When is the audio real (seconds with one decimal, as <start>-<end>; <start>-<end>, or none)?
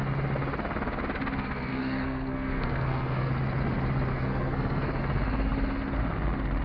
0.0-1.7; 3.3-4.1; 5.0-6.6